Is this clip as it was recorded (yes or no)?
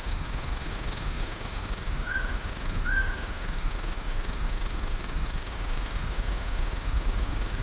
no